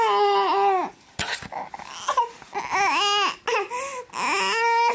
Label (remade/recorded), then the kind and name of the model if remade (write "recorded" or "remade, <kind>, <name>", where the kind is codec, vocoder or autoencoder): recorded